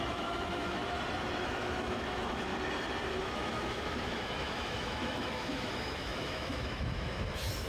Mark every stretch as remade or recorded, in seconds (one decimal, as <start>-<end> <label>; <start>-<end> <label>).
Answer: 0.0-0.8 remade; 0.8-1.4 recorded; 1.4-2.5 remade; 2.5-3.2 recorded; 3.2-7.7 remade